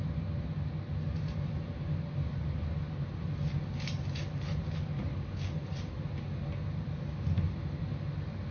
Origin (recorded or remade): recorded